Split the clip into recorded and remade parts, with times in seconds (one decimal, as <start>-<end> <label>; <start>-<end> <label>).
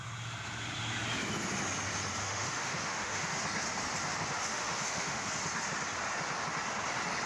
0.0-2.2 recorded; 2.2-3.4 remade; 3.4-4.5 recorded; 4.5-5.3 remade; 5.3-7.3 recorded